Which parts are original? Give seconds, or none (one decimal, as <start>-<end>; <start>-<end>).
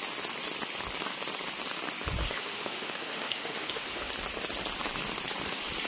0.0-2.2; 4.1-5.9